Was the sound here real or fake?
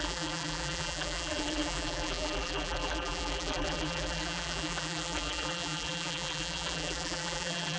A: fake